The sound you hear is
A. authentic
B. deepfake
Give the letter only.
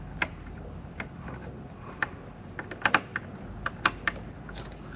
A